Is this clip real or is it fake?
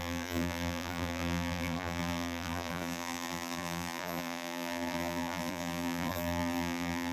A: fake